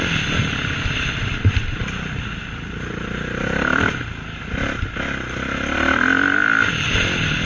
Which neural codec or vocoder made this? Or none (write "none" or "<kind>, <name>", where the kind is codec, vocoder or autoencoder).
none